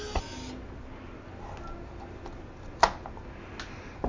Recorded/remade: recorded